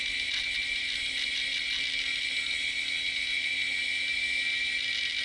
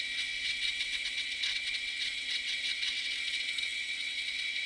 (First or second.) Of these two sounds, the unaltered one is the first